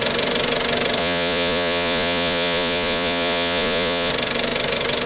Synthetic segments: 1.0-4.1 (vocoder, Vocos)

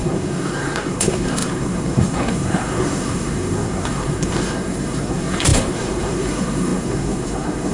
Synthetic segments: 0.0-7.7 (codec, SNAC)

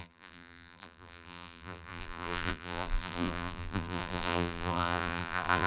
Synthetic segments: 0.0-5.7 (vocoder, BigVGAN v2)

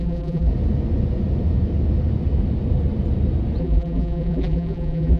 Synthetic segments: 0.0-0.5 (vocoder, BigVGAN v2); 3.6-5.2

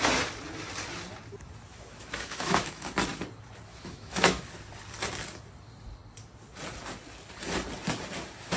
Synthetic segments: 1.7-2.9 (autoencoder, DAC-VAE); 3.7-4.4

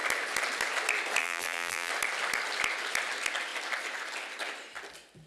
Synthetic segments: 1.2-1.9 (vocoder, BigVGAN v2)

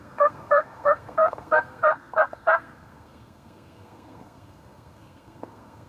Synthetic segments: 0.0-5.9 (codec, SNAC)

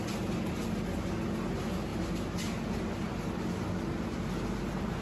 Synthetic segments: none